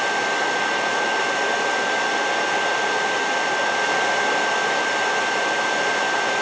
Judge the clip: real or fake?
real